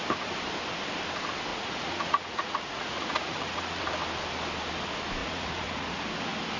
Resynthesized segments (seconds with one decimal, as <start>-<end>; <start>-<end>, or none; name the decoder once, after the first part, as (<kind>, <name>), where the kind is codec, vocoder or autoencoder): 1.5-3.8 (vocoder, Vocos); 5.2-6.0